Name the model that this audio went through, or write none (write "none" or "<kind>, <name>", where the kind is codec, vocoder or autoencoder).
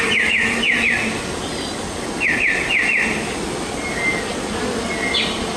none